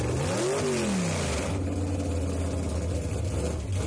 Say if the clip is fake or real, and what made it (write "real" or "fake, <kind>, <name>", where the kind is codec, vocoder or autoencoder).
real